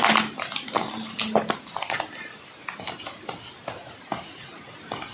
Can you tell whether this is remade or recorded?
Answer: recorded